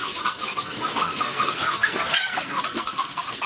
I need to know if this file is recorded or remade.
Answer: remade